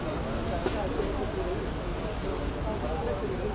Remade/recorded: recorded